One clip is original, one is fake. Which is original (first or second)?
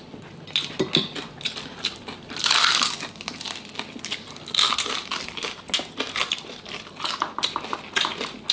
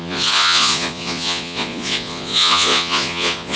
first